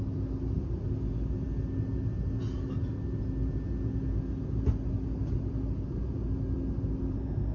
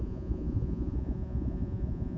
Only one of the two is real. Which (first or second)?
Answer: first